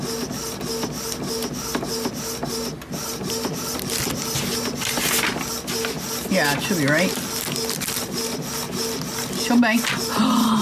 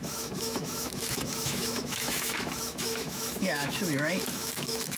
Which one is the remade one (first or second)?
second